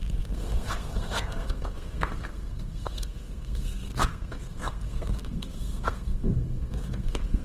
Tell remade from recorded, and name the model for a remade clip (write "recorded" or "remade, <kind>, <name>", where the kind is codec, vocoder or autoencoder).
remade, codec, SNAC